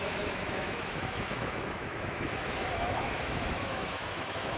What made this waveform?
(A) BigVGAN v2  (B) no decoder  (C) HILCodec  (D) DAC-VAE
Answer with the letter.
D